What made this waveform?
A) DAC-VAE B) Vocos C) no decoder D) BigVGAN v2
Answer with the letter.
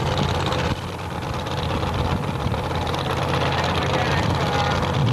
C